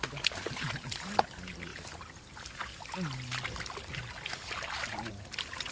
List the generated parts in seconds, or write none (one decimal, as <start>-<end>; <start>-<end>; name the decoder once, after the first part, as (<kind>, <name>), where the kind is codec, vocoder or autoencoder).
none